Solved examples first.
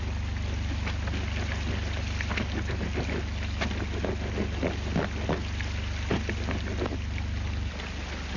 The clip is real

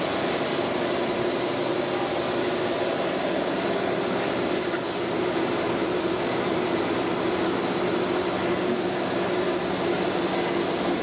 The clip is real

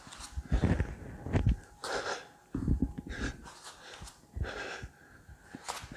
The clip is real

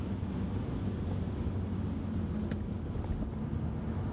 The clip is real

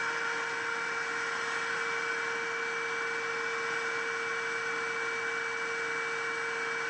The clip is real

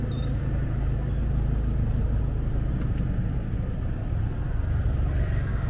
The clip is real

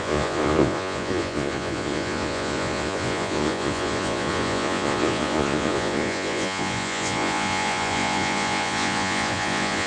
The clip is fake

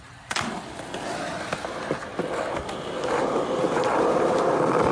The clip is real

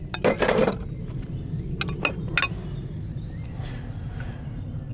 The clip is real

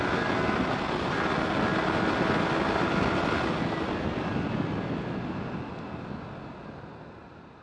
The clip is real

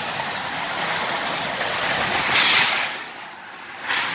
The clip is real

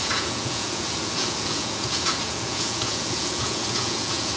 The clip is fake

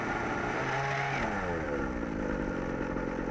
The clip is real